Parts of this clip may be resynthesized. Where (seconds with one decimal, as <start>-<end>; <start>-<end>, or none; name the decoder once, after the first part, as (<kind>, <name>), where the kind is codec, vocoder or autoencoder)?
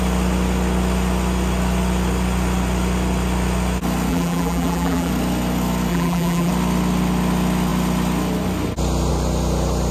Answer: 4.1-5.1 (vocoder, BigVGAN v2); 5.9-6.5